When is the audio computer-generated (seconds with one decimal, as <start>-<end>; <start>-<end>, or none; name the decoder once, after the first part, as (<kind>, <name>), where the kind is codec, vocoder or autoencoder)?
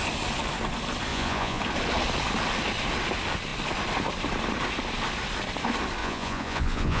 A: 1.1-1.6 (vocoder, Vocos); 6.0-7.0